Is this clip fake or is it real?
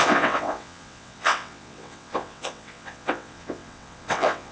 fake